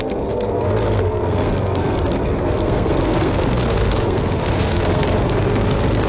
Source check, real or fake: fake